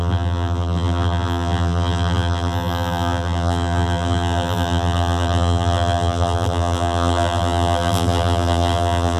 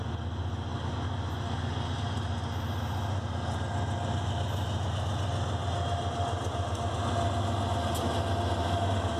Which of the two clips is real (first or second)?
second